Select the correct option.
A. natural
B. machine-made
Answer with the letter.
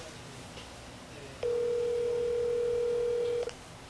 A